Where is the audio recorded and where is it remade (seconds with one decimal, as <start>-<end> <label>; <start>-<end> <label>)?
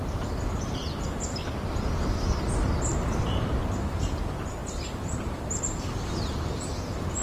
0.0-0.8 remade; 0.8-2.9 recorded; 2.9-7.2 remade